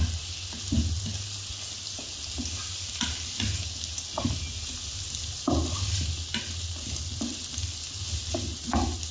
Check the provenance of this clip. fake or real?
real